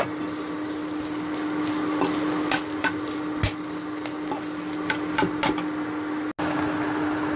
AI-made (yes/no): no